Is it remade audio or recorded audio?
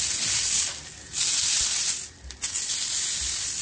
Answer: recorded